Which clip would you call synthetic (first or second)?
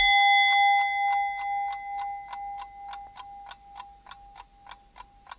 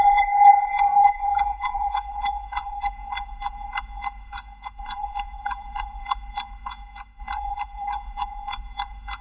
second